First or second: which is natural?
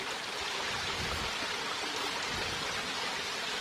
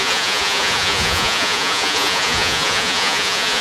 first